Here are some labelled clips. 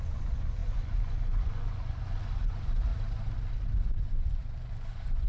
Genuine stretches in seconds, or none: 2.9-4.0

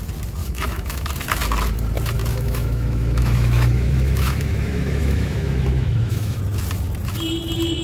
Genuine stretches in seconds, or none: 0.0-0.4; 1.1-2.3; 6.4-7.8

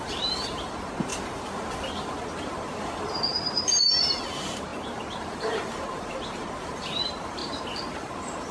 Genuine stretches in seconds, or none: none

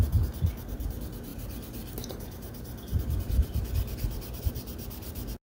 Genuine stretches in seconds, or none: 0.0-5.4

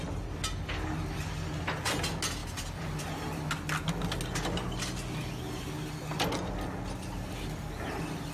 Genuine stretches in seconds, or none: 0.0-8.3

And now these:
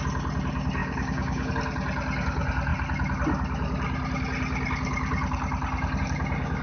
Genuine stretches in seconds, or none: 0.0-0.8; 1.5-6.6

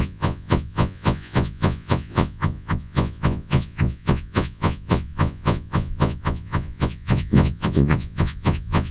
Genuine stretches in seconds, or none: none